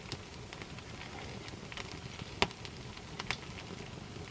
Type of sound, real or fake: real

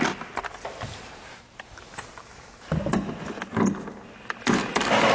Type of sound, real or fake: real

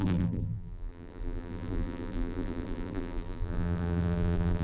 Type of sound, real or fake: fake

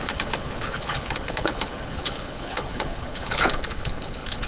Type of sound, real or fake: fake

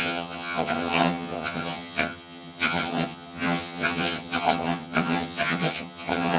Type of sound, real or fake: fake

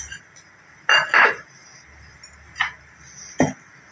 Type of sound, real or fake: real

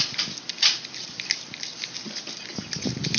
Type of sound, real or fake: real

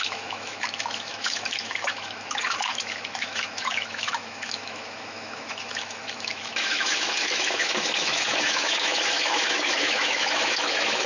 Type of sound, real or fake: fake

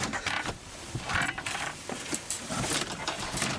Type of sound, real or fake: fake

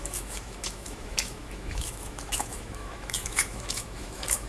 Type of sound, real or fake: fake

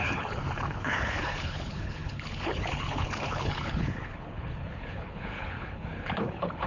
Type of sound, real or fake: fake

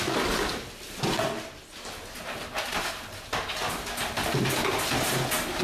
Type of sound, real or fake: real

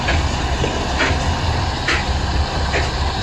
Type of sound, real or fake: real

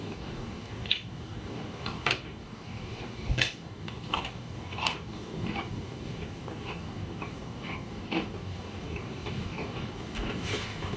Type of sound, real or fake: fake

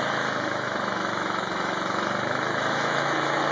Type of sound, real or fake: fake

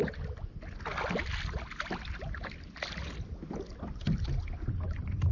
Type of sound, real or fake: real